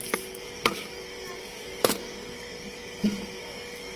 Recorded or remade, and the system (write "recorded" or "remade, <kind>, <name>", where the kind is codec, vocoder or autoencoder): remade, codec, DAC